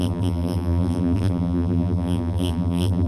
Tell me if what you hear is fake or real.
fake